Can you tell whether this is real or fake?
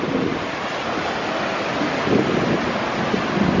real